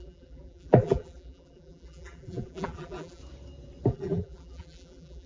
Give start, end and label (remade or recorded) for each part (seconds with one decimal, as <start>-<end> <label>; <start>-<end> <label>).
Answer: 0.0-3.2 remade; 3.2-3.9 recorded; 3.9-5.3 remade